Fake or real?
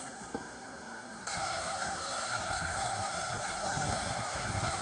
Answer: fake